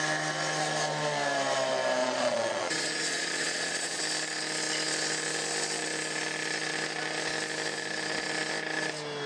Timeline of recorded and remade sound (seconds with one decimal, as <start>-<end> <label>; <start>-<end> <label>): 0.0-2.0 recorded; 2.0-4.0 remade; 4.0-9.3 recorded

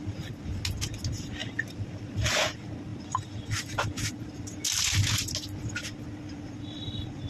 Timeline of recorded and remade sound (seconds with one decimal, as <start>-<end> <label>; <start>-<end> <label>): 0.0-7.3 recorded